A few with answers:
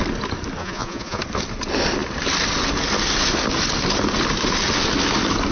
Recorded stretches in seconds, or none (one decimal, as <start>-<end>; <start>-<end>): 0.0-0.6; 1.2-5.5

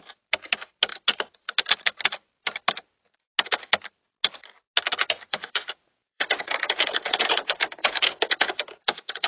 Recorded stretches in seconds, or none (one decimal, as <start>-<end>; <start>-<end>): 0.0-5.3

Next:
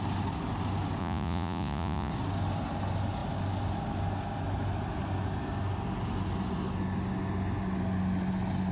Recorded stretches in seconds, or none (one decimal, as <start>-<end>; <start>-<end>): 0.0-1.0; 2.1-8.7